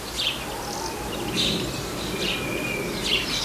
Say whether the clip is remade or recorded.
recorded